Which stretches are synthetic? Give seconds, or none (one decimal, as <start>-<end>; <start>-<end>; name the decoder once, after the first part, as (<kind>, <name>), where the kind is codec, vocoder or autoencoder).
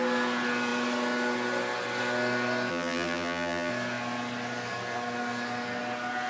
2.7-3.7 (vocoder, BigVGAN v2)